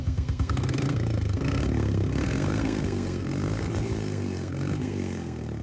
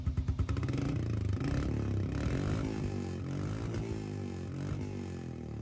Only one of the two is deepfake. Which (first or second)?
first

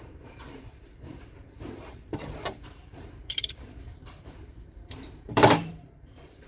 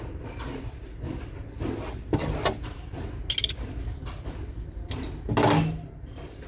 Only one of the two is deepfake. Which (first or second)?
first